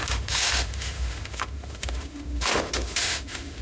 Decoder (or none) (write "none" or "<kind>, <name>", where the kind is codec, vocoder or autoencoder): autoencoder, DAC-VAE